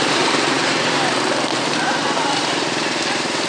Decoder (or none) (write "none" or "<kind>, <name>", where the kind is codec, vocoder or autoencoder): vocoder, BigVGAN v2